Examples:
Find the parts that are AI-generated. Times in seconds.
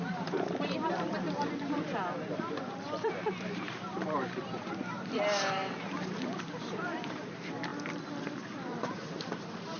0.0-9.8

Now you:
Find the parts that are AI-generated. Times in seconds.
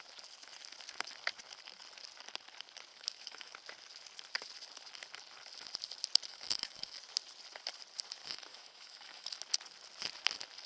2.9-3.5; 6.3-7.0; 8.2-9.4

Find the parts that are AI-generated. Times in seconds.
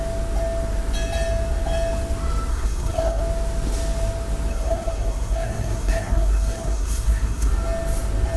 2.5-3.2; 4.5-7.5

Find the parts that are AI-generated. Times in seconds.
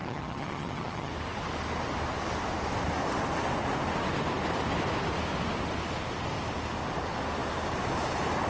0.0-1.1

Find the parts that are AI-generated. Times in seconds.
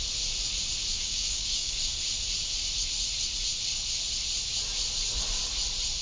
0.9-1.9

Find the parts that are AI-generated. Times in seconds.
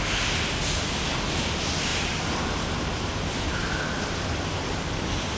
none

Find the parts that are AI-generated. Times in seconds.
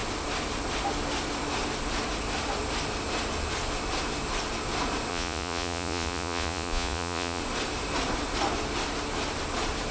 5.1-7.4